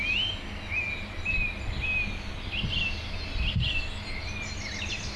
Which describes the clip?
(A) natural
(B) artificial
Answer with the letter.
A